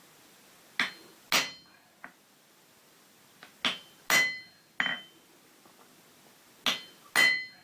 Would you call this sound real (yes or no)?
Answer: yes